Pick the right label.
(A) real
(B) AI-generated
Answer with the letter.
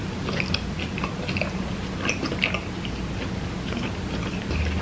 A